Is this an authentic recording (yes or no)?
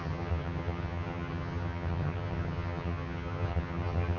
no